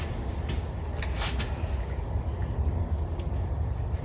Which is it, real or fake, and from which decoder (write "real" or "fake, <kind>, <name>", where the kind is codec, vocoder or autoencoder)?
real